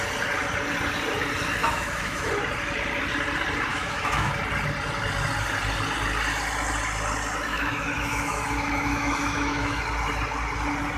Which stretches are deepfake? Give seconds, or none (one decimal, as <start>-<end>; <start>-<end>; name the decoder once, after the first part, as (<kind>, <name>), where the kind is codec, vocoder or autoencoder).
1.6-2.3 (autoencoder, DAC-VAE); 3.7-4.3; 7.5-9.8